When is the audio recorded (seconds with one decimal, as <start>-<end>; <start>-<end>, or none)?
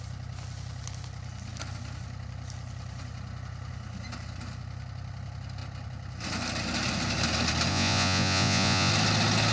0.0-7.7; 8.9-9.5